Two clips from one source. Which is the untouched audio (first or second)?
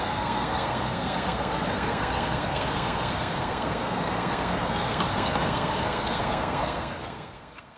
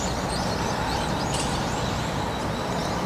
second